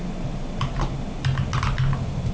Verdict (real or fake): real